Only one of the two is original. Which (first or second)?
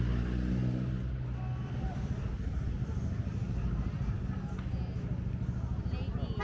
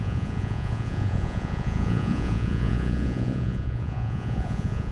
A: first